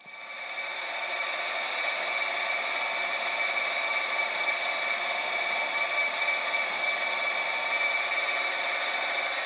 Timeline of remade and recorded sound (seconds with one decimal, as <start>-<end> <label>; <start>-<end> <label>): 0.0-9.5 recorded